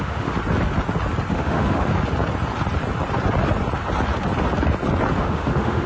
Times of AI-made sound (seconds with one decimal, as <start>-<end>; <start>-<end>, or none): 0.0-0.4; 1.3-1.9; 5.2-5.9